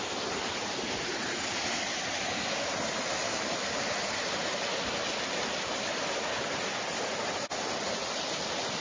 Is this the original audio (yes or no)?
yes